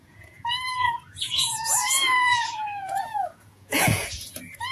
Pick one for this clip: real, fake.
fake